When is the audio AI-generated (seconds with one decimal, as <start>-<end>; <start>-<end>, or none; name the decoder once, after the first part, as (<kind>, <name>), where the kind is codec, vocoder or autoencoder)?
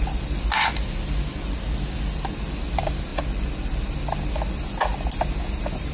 none